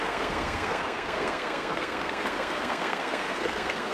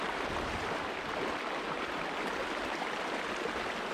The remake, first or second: first